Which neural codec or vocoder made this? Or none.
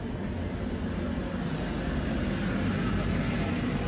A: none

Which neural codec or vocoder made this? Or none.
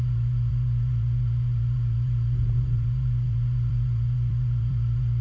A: vocoder, BigVGAN v2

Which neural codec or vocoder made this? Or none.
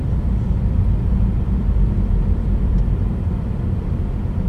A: vocoder, BigVGAN v2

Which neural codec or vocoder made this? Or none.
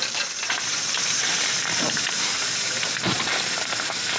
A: vocoder, BigVGAN v2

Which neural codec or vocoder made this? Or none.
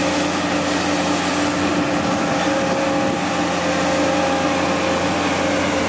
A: none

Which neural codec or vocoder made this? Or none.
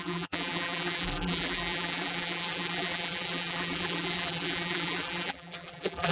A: vocoder, BigVGAN v2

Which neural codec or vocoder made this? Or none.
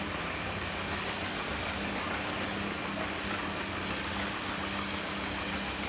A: none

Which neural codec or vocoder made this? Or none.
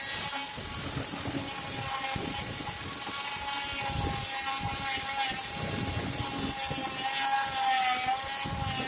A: none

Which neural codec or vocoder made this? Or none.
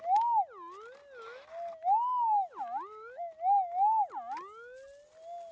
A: none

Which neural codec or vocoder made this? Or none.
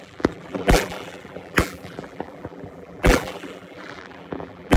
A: vocoder, BigVGAN v2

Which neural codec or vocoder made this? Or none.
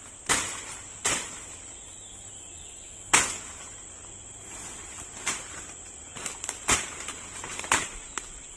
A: none